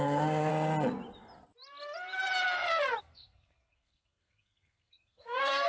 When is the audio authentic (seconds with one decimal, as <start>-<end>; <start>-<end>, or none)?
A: 0.5-3.0